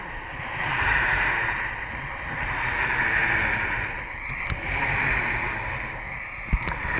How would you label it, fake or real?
real